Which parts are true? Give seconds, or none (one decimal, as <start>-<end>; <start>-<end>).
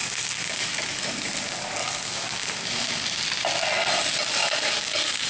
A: 3.2-4.4